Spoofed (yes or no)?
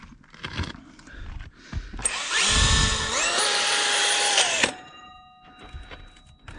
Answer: no